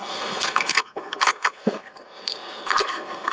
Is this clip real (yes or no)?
no